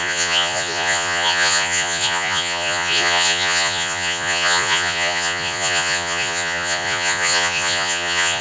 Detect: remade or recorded remade